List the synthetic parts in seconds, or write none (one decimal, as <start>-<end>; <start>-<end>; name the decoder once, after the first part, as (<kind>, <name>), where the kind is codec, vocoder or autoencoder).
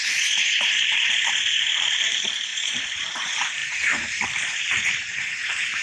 0.0-5.8 (vocoder, BigVGAN v2)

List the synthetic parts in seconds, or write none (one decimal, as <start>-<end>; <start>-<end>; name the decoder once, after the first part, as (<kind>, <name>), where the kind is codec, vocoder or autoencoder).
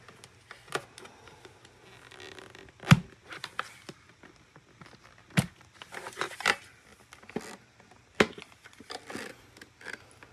none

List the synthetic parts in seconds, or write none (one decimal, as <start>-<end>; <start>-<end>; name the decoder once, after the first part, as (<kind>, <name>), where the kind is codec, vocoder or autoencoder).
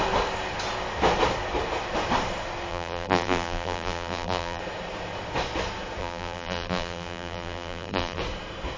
2.7-4.6 (vocoder, BigVGAN v2); 6.0-8.2